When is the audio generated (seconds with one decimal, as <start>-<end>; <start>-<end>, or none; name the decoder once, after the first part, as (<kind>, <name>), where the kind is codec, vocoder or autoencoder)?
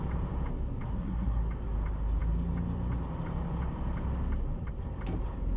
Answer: 0.9-1.4 (codec, SNAC)